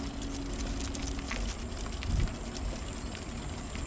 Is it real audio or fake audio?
real